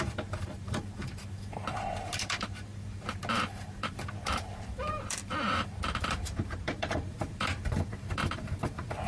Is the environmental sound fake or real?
fake